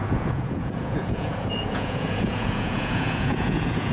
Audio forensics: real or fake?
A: fake